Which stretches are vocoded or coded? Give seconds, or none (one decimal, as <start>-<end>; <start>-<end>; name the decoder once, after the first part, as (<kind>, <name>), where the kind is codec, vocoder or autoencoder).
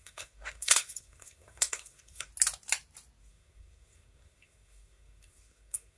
0.0-2.3 (codec, SNAC); 3.2-6.0